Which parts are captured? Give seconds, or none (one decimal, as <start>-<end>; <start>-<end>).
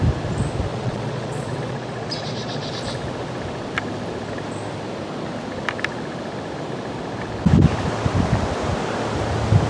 0.0-0.7; 2.7-9.7